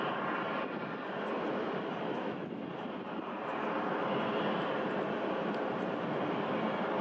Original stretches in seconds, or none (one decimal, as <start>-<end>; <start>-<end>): 0.0-2.1; 2.6-7.0